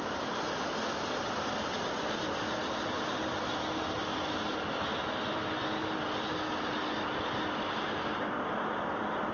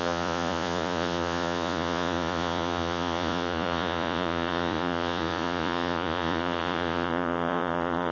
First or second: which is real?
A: first